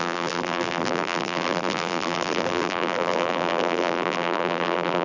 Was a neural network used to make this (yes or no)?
yes